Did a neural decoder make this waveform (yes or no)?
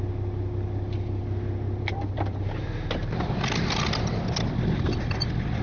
no